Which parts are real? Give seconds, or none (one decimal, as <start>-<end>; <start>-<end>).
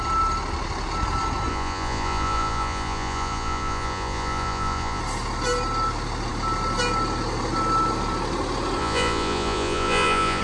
0.0-1.5; 5.0-8.8